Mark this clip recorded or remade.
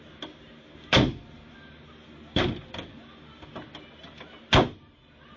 recorded